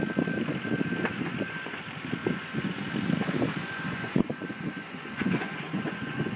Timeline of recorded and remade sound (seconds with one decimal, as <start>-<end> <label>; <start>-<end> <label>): 0.0-1.1 recorded; 1.1-1.8 remade; 1.8-2.2 recorded; 2.2-2.9 remade; 2.9-3.6 recorded; 3.6-6.4 remade